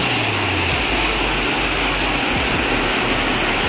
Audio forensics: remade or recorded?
recorded